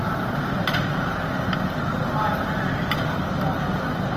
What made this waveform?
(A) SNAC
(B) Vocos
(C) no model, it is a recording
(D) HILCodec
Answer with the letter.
C